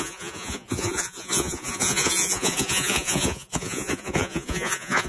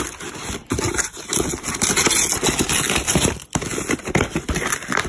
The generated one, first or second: first